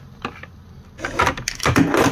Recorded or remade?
recorded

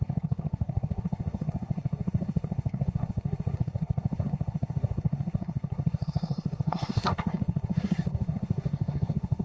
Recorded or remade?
remade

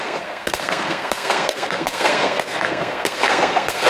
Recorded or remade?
remade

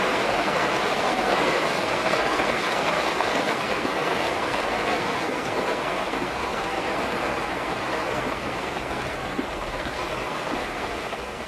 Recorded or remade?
remade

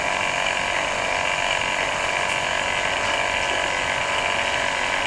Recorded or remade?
recorded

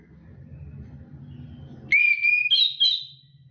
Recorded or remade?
recorded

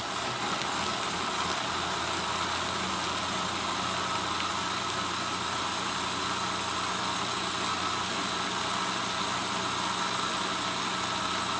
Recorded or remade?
recorded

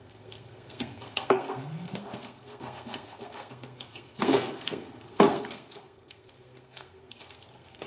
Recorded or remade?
remade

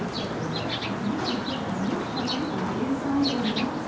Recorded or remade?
recorded